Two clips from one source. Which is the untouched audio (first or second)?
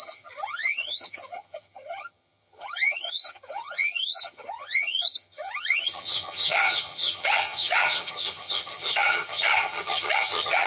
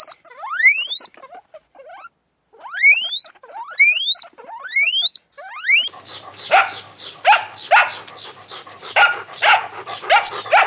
second